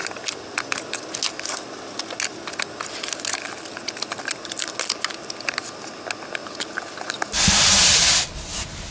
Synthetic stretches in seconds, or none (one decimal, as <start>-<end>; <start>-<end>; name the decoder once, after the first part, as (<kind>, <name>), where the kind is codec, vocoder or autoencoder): none